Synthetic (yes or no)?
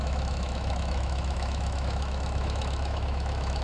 yes